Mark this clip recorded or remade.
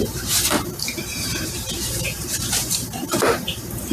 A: remade